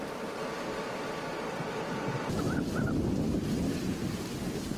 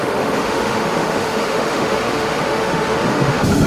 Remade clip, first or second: second